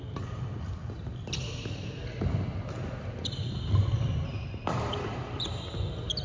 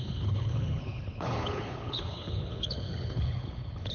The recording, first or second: first